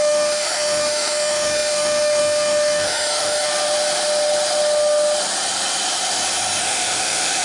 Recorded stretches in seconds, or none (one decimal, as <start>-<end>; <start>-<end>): 3.5-6.6